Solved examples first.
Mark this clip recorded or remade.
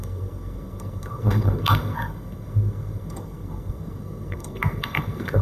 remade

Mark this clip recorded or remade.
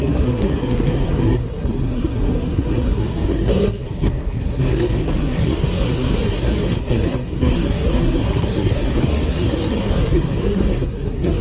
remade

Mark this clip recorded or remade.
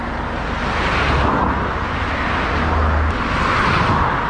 recorded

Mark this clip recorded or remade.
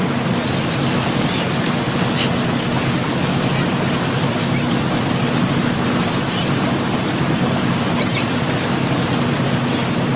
recorded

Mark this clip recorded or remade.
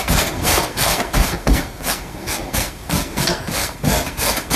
remade